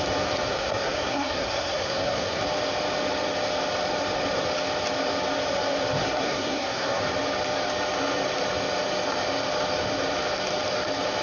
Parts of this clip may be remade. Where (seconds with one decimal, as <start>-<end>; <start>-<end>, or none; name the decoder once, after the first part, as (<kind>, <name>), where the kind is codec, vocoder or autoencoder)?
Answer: 0.5-2.4 (codec, SNAC); 6.0-7.0